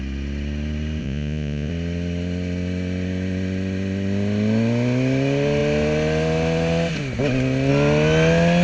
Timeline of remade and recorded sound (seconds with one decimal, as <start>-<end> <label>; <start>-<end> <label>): 0.0-1.0 recorded; 1.0-1.7 remade; 1.7-8.6 recorded